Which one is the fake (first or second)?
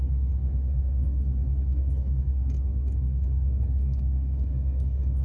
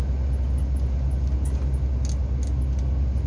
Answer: first